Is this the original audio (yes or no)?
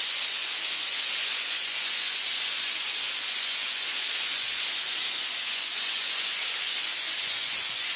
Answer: no